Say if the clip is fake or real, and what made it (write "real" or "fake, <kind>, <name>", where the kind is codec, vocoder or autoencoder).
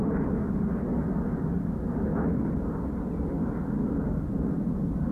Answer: real